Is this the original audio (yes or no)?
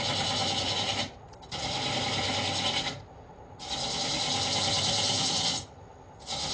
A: yes